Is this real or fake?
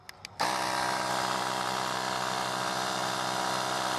real